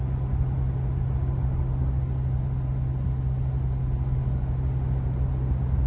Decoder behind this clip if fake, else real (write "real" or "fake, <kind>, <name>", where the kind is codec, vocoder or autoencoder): real